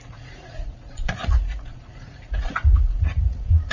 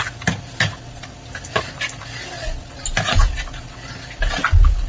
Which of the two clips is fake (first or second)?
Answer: first